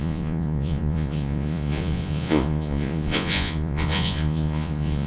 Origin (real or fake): fake